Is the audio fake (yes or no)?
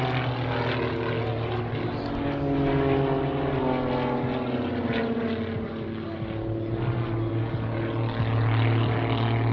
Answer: no